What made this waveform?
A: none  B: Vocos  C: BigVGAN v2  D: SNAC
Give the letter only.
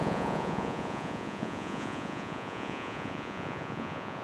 B